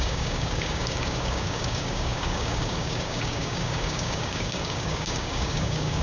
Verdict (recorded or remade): remade